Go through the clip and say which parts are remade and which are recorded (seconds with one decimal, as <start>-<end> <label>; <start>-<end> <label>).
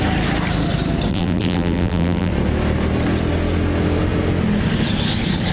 0.0-1.1 recorded; 1.1-2.3 remade; 2.3-5.5 recorded